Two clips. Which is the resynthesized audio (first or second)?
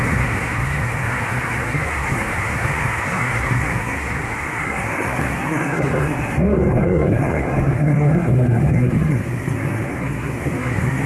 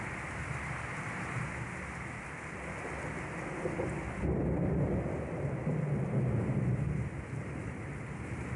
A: first